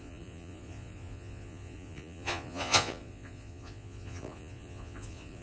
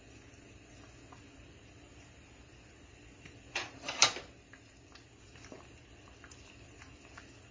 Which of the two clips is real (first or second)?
second